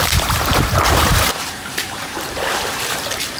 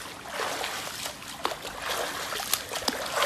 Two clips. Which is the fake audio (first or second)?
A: first